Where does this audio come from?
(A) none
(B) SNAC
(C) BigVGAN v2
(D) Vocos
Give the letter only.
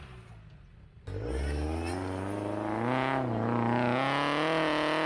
A